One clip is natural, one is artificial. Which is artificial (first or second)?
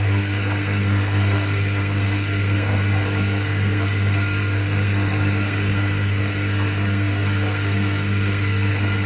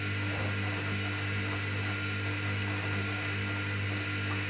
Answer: first